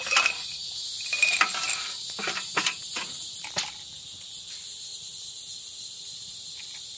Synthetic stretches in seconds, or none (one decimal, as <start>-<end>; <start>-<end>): none